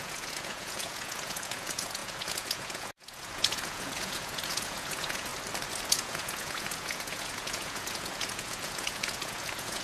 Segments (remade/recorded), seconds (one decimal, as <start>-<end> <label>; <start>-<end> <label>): 0.0-5.3 remade; 5.3-5.9 recorded; 5.9-9.8 remade